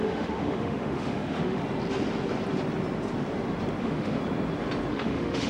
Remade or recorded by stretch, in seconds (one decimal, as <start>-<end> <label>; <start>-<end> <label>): 0.0-1.6 remade; 1.6-3.8 recorded; 3.8-4.2 remade; 4.2-4.9 recorded; 4.9-5.5 remade